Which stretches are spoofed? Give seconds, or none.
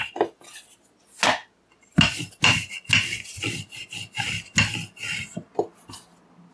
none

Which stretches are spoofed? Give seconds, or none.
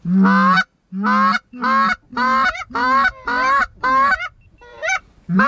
4.7-5.5